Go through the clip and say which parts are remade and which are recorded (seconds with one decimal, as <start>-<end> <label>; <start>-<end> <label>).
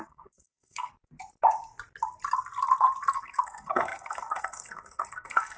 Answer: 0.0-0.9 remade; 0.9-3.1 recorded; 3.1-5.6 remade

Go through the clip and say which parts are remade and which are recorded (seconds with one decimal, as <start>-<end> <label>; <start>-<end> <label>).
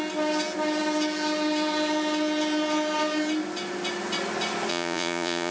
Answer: 0.0-4.7 recorded; 4.7-5.5 remade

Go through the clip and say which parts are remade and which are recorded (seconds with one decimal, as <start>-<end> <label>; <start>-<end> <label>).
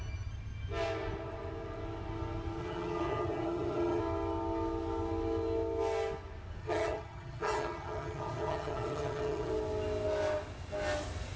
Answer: 0.0-2.6 recorded; 2.6-4.0 remade; 4.0-6.6 recorded; 6.6-9.5 remade; 9.5-11.4 recorded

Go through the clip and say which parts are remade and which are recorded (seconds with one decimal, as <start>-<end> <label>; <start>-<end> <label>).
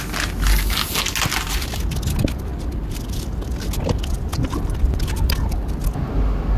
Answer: 0.0-6.6 recorded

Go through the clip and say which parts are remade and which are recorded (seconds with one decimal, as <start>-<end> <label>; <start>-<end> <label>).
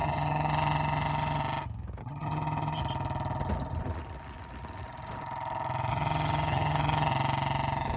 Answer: 0.0-1.4 remade; 1.4-2.0 recorded; 2.0-2.8 remade; 2.8-5.9 recorded; 5.9-7.1 remade; 7.1-8.0 recorded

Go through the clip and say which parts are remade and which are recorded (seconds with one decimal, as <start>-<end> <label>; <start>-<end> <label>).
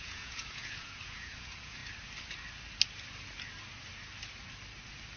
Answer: 0.0-1.8 remade; 1.8-5.2 recorded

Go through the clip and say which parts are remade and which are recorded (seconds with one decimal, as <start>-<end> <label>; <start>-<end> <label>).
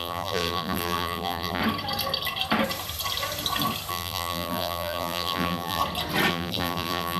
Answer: 0.0-1.6 remade; 1.6-3.9 recorded; 3.9-5.8 remade; 5.8-6.3 recorded; 6.3-7.2 remade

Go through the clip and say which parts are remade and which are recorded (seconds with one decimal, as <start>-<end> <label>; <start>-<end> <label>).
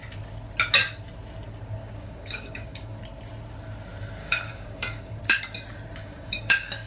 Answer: 0.0-1.8 recorded; 1.8-3.0 remade; 3.0-4.2 recorded; 4.2-5.2 remade; 5.2-6.0 recorded; 6.0-6.9 remade